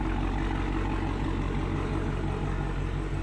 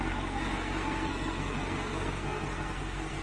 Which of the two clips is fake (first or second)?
second